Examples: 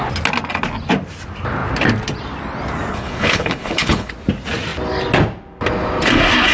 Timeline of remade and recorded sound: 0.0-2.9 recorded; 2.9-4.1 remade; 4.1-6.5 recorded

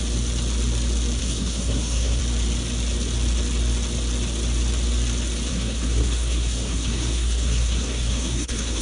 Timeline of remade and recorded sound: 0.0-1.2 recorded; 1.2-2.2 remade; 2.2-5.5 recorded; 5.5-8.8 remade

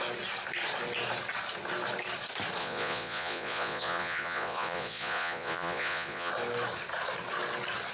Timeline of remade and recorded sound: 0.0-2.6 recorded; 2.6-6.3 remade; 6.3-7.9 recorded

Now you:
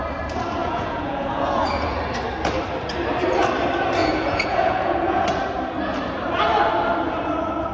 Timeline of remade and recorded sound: 0.0-0.6 recorded; 0.6-2.0 remade; 2.0-4.0 recorded; 4.0-5.2 remade; 5.2-7.7 recorded

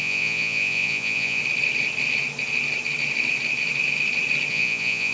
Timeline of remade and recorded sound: 0.0-1.4 remade; 1.4-4.5 recorded; 4.5-5.1 remade

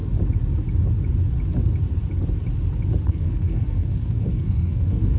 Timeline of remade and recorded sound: 0.0-3.1 recorded; 3.1-5.2 remade